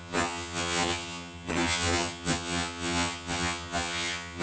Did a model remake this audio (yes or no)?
yes